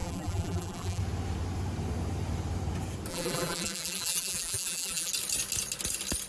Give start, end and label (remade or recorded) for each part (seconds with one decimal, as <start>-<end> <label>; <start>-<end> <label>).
0.0-1.0 remade; 1.0-3.1 recorded; 3.1-5.1 remade; 5.1-6.3 recorded